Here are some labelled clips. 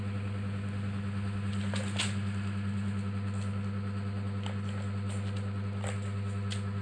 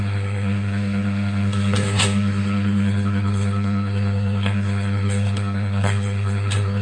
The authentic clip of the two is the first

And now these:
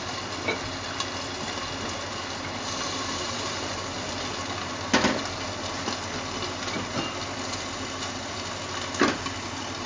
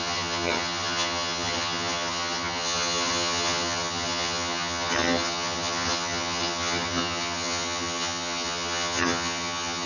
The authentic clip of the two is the first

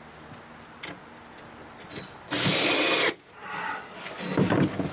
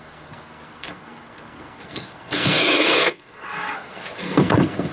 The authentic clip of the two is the first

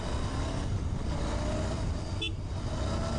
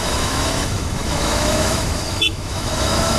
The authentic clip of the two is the first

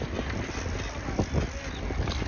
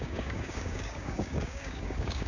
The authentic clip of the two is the first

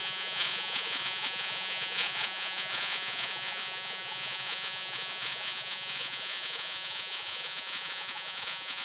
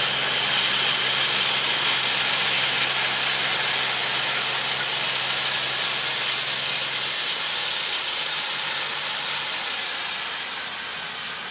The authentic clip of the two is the second